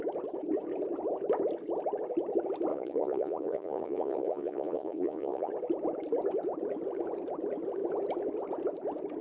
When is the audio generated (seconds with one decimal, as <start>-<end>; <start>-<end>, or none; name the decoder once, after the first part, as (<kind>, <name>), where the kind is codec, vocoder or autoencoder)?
2.7-5.5 (vocoder, Vocos)